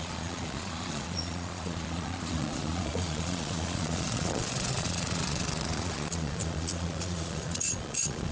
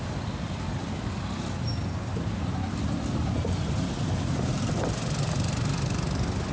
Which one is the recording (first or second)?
second